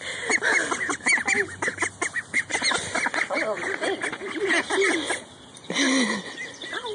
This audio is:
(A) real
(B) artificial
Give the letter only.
A